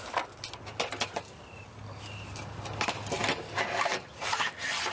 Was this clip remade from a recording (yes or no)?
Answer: no